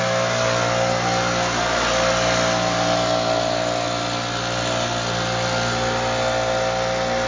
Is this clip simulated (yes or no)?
no